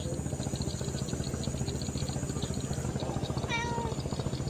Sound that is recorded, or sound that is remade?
recorded